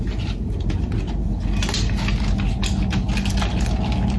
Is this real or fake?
real